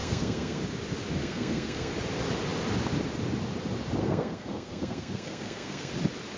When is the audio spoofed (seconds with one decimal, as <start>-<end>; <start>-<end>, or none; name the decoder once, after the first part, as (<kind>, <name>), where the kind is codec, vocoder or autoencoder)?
0.0-0.6 (codec, SNAC); 1.2-1.9; 4.0-5.9